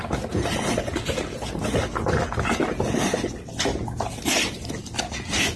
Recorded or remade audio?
recorded